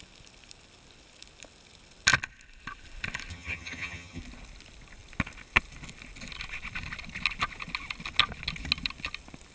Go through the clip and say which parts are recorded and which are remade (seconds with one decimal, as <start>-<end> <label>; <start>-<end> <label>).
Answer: 0.0-3.3 recorded; 3.3-4.2 remade; 4.2-9.5 recorded